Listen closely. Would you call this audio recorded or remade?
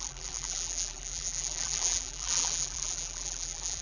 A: remade